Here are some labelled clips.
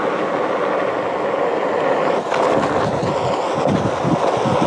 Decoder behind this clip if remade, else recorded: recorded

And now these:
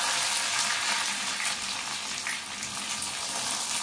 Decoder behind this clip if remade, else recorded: recorded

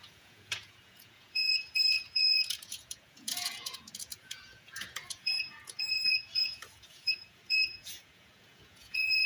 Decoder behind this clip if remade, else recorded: remade, vocoder, Vocos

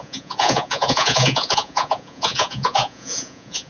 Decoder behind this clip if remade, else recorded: remade, vocoder, Vocos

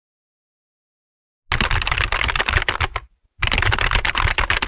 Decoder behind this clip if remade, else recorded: recorded